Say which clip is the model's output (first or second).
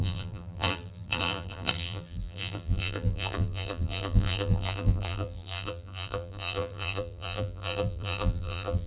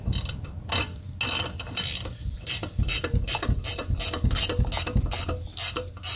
first